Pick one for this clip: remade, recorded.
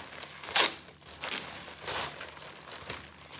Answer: recorded